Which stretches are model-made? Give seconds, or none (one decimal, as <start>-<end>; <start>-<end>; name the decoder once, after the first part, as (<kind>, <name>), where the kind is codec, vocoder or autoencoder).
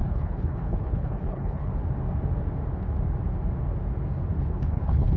0.0-1.7 (codec, HILCodec); 4.4-5.2